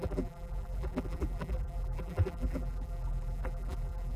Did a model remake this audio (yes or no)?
yes